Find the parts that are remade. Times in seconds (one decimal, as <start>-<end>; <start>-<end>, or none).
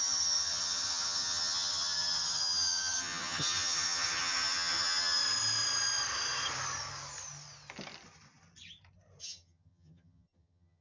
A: 0.0-5.2; 9.2-10.8